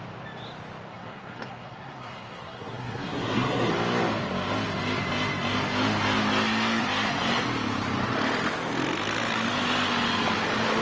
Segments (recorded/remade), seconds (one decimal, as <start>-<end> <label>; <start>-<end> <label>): 0.0-0.9 recorded; 0.9-3.7 remade; 3.7-10.8 recorded